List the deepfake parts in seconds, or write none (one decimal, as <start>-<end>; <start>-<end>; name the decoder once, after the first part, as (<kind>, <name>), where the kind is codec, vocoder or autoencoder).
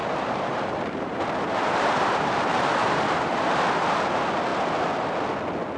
0.0-3.5 (vocoder, BigVGAN v2)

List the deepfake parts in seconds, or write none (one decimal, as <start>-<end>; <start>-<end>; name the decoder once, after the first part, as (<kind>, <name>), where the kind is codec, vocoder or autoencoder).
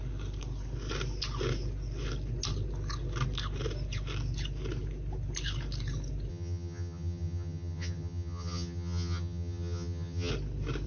6.3-10.3 (vocoder, HiFi-GAN)